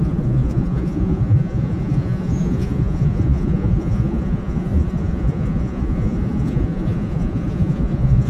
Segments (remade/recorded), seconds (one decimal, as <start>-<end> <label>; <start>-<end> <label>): 0.0-8.3 remade